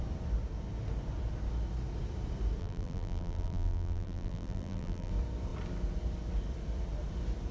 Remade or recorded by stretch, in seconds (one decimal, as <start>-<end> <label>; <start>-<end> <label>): 0.0-2.6 recorded; 2.6-5.1 remade; 5.1-7.5 recorded